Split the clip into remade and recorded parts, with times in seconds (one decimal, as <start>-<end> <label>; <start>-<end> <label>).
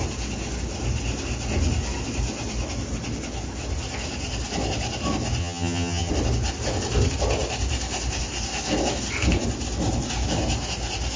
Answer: 0.0-5.4 recorded; 5.4-6.1 remade; 6.1-11.2 recorded